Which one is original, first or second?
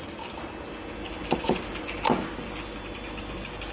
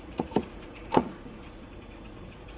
first